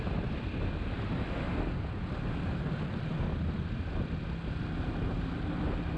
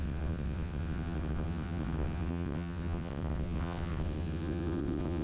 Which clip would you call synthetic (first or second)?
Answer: second